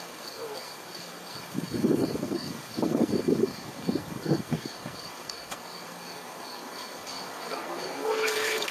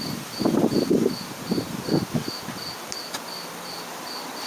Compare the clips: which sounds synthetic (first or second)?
first